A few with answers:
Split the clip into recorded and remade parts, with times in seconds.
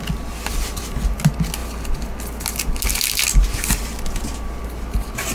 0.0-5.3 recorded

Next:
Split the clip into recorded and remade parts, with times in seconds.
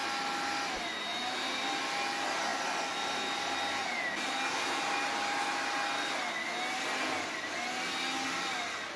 0.0-9.0 recorded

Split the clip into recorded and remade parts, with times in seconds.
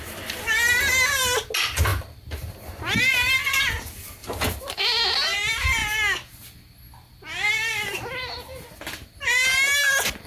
0.0-1.9 recorded; 1.9-3.3 remade; 3.3-4.2 recorded; 4.2-4.8 remade; 4.8-10.3 recorded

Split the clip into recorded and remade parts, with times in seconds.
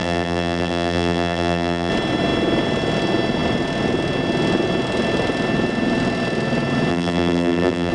0.0-1.9 remade; 1.9-6.9 recorded; 6.9-7.9 remade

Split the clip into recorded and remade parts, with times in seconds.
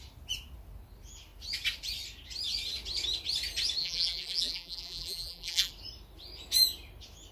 0.0-3.8 recorded; 3.8-5.7 remade; 5.7-7.3 recorded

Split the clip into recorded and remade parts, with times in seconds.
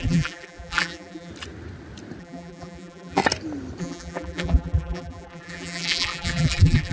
0.0-1.3 remade; 1.3-2.2 recorded; 2.2-3.2 remade; 3.2-3.8 recorded; 3.8-6.9 remade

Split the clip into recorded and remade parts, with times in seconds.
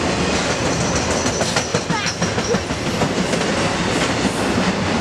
0.0-5.0 recorded